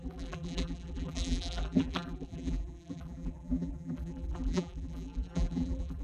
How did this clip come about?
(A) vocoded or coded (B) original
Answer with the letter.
A